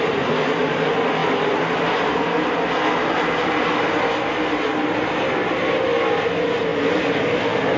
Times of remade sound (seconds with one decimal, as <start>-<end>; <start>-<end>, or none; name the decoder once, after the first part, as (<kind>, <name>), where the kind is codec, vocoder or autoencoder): none